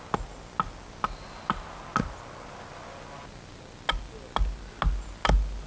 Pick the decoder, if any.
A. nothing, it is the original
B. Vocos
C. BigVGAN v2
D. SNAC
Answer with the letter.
A